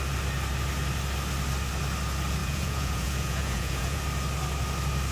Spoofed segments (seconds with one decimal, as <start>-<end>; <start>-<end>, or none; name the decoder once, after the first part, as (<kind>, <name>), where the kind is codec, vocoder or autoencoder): 2.4-4.0 (vocoder, Vocos)